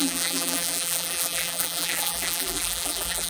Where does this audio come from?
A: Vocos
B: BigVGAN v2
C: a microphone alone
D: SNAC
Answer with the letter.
B